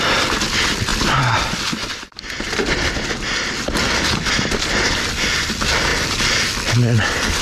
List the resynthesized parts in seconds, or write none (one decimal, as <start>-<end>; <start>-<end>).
none